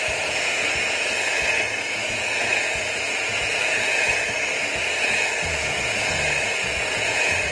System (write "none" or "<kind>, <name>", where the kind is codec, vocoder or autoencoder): vocoder, Vocos